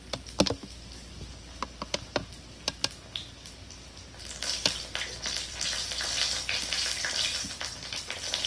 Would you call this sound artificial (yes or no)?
no